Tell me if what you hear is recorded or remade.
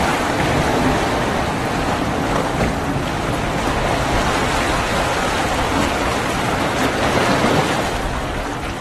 recorded